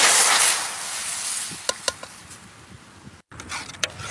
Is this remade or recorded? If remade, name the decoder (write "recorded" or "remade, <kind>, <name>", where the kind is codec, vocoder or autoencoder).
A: recorded